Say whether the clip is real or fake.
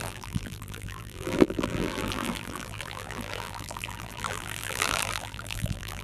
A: fake